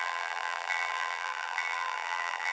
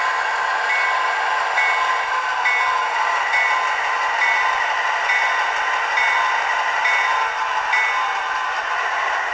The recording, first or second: second